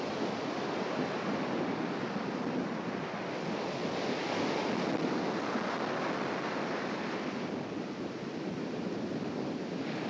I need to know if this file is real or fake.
real